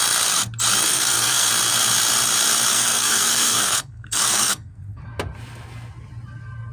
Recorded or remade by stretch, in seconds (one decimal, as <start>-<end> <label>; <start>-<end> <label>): 0.0-0.9 recorded; 0.9-1.5 remade; 1.5-2.7 recorded; 2.7-5.0 remade; 5.0-6.7 recorded